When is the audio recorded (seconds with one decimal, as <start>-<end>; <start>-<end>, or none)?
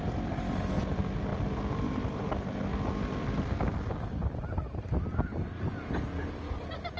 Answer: 0.0-7.0